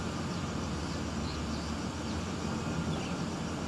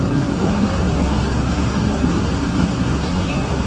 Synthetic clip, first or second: second